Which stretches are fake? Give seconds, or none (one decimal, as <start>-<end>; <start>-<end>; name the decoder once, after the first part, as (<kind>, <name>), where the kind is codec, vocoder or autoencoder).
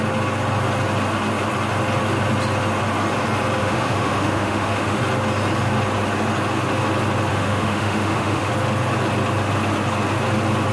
3.6-5.0 (autoencoder, DAC-VAE); 7.3-8.5